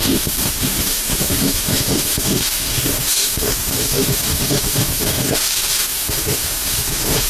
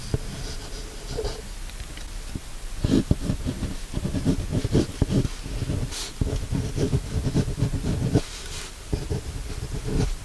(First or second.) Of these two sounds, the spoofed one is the first